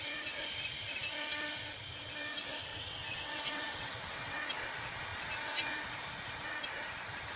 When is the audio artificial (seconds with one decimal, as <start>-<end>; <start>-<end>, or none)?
2.7-4.4